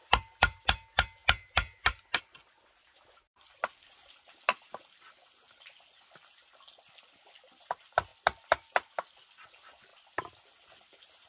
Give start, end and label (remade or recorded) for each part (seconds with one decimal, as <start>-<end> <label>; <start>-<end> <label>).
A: 0.0-0.6 remade; 0.6-1.2 recorded; 1.2-2.2 remade; 2.2-11.3 recorded